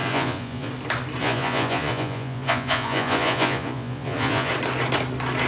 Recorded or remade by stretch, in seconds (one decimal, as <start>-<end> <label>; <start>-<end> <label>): 0.0-0.7 remade; 0.7-1.2 recorded; 1.2-4.5 remade; 4.5-5.5 recorded